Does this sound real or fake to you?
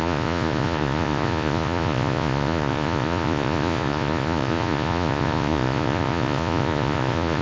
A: fake